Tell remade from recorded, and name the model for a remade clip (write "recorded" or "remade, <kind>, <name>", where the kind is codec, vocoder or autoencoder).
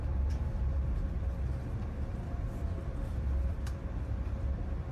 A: remade, vocoder, BigVGAN v2